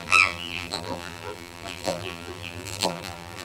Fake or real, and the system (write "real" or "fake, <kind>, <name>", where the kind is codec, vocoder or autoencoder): fake, vocoder, BigVGAN v2